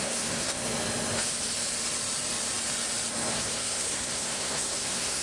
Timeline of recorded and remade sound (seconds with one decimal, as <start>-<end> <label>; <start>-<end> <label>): 0.0-0.6 remade; 0.6-3.3 recorded; 3.3-5.2 remade